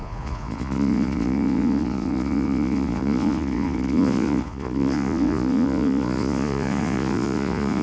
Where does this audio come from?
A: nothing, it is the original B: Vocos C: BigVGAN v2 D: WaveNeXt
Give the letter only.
B